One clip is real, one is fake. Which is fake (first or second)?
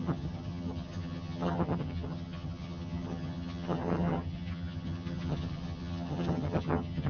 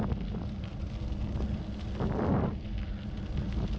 first